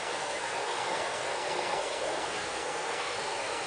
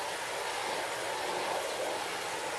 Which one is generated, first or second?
first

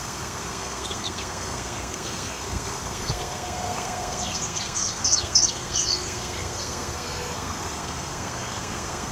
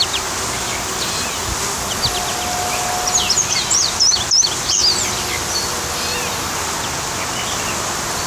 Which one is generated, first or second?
first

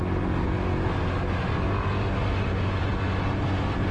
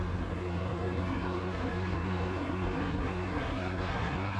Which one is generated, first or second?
second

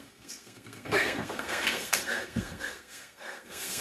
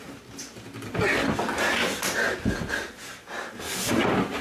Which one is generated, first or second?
first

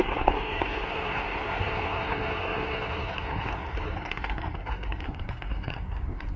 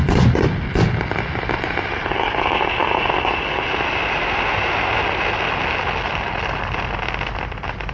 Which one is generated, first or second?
first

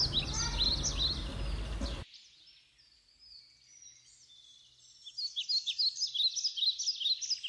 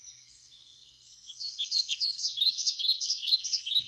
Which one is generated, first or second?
second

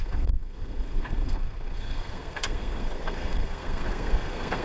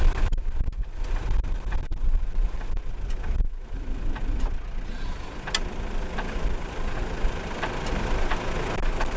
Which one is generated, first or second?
first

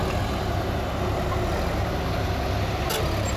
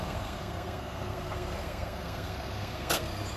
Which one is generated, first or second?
second